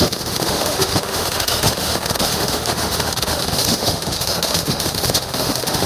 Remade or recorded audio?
remade